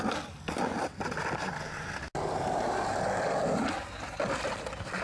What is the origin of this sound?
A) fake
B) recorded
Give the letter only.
B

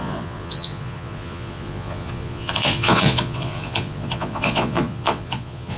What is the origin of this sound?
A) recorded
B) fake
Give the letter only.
B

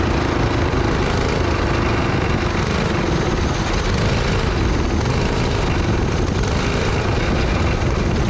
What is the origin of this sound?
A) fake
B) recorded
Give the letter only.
B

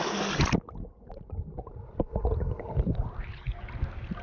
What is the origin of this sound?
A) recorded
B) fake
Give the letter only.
A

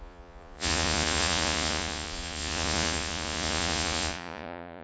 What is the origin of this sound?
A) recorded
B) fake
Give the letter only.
B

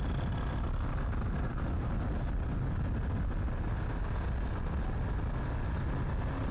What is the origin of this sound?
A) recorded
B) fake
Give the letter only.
A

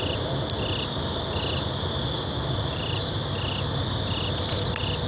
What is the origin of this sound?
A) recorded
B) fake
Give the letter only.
A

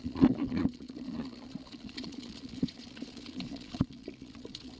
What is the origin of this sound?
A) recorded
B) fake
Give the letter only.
B